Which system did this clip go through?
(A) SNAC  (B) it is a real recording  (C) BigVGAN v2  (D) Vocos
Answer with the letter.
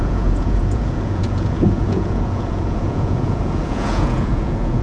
D